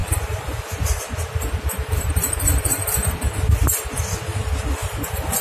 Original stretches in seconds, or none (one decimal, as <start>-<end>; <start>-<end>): 3.2-4.8